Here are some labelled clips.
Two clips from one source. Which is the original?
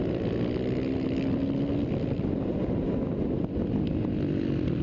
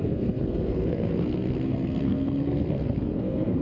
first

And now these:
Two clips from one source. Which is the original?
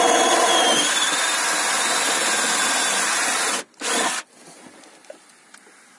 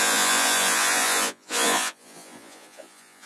first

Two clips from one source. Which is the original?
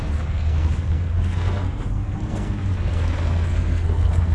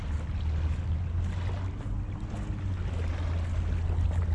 second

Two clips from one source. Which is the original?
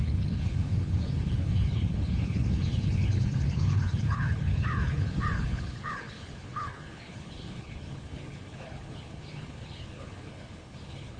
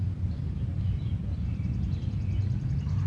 second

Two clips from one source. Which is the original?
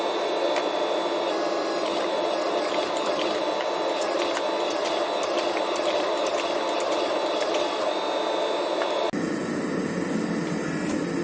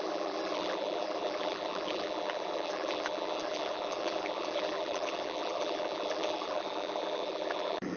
first